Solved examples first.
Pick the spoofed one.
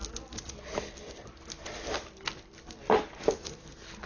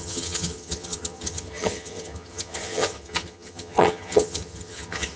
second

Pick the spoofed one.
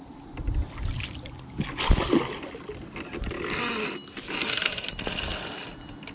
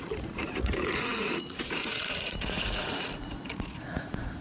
second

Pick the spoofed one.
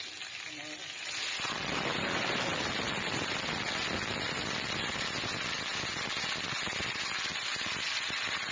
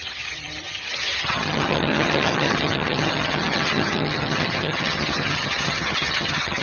second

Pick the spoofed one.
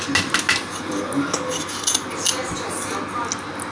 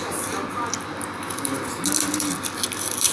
second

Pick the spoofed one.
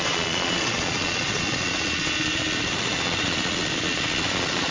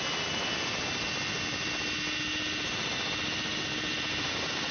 first